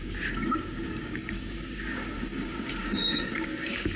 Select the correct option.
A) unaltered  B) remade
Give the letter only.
B